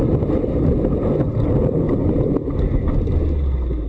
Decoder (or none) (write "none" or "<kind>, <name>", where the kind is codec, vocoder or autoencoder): none